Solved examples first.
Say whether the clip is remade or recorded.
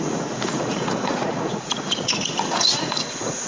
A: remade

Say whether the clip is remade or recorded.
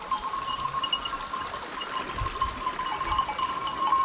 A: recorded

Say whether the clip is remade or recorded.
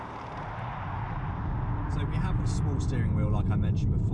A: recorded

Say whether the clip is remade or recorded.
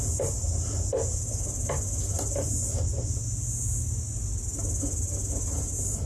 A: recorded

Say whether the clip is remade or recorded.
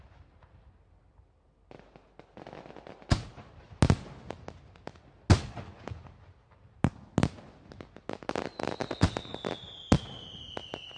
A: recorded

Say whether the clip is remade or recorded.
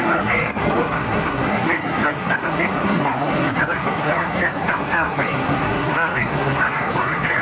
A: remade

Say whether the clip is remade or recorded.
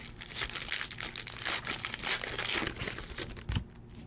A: recorded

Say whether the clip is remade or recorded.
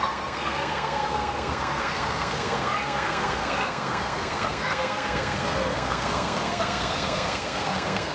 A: remade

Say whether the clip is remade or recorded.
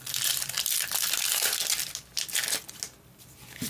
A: recorded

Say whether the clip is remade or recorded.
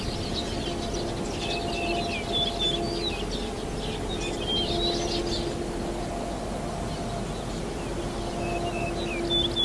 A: recorded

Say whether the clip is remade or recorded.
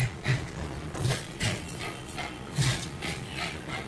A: remade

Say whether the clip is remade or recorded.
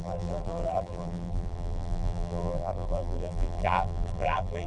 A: remade